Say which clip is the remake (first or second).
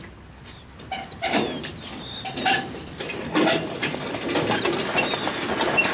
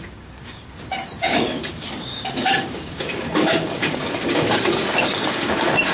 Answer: second